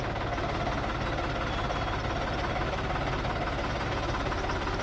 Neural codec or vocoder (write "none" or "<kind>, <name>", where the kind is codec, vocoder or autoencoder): none